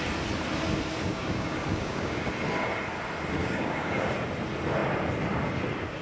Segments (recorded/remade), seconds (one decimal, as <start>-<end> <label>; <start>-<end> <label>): 0.0-1.1 recorded; 1.1-2.3 remade; 2.3-3.4 recorded; 3.4-4.0 remade; 4.0-6.0 recorded